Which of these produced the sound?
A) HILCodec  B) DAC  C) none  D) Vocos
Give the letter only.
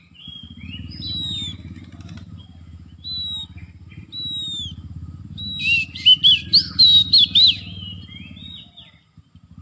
C